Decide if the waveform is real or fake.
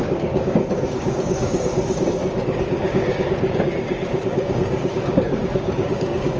fake